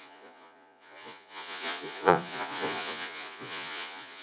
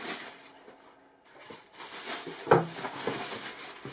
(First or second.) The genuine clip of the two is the second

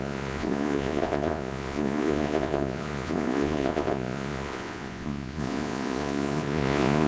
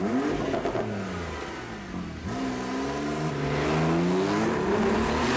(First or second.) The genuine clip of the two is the second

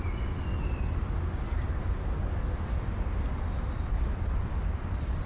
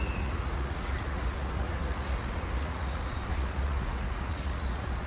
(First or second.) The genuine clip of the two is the first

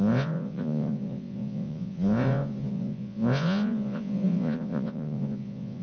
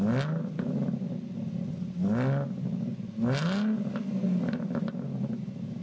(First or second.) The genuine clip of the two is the second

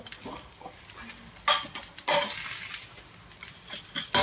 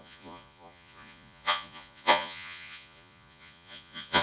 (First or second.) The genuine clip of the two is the first